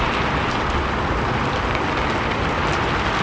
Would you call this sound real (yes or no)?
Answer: yes